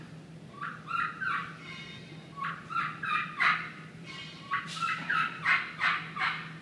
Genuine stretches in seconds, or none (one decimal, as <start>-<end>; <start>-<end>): 0.0-1.4; 5.4-6.6